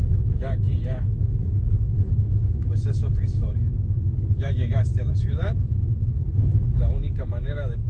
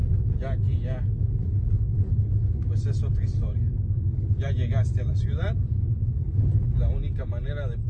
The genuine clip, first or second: second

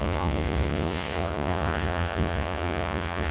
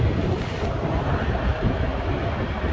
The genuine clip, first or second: second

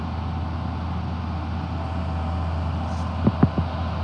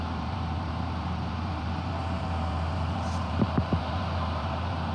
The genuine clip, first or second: first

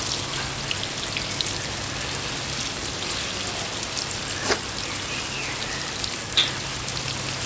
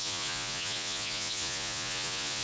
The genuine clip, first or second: first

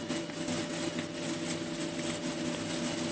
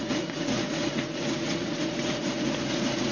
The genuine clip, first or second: first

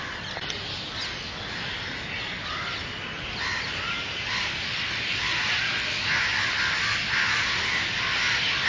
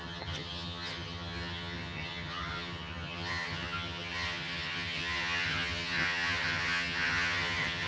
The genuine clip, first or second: first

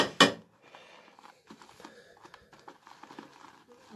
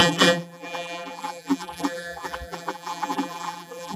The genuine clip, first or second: first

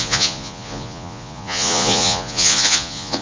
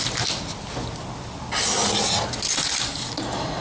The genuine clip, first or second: second